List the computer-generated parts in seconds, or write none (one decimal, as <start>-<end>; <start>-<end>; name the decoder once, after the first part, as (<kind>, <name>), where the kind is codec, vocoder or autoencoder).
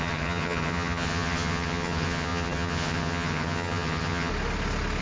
0.0-4.3 (vocoder, HiFi-GAN)